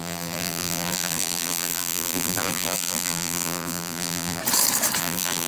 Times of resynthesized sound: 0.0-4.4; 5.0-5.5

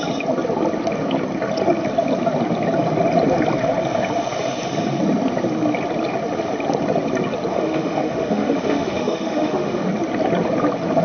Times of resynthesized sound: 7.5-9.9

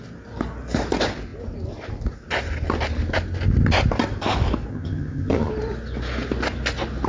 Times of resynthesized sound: 4.7-5.5

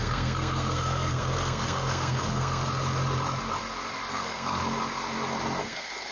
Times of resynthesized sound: 0.0-2.6; 4.1-4.6; 5.6-6.1

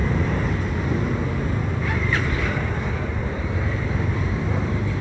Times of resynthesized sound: 0.0-0.7; 1.7-2.7; 3.2-5.0

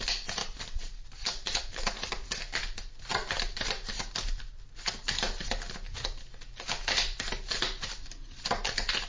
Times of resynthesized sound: 0.4-2.4

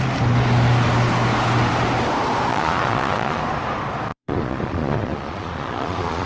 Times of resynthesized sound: 2.5-3.4; 4.1-6.3